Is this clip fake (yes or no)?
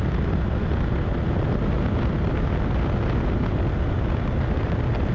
no